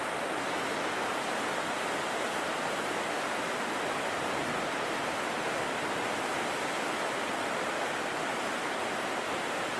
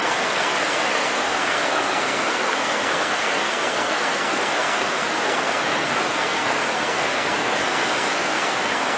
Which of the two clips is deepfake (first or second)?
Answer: second